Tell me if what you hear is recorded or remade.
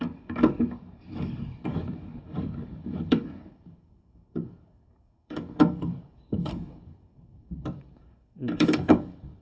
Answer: remade